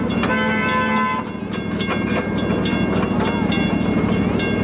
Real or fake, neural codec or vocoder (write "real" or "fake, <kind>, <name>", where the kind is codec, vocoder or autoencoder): real